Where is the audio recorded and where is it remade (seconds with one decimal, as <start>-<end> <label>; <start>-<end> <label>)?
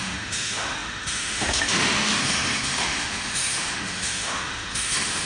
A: 0.0-5.3 remade